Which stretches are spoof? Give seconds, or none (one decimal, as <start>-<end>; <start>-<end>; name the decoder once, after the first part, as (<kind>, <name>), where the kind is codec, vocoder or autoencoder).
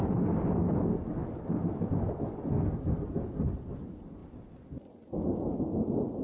1.2-2.1 (autoencoder, DAC-VAE)